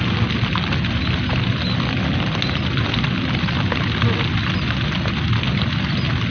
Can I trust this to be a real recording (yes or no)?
yes